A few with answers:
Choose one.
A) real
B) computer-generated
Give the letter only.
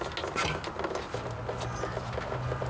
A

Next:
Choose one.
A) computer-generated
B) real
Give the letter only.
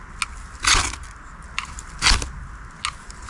B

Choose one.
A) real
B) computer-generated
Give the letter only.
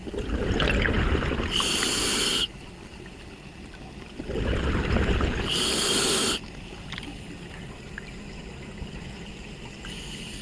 A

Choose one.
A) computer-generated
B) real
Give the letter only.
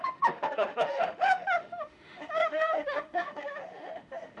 A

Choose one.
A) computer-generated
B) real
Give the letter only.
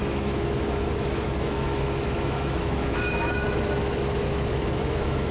A